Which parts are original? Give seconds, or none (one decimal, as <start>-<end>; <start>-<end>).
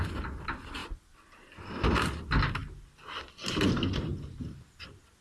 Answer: 0.0-5.2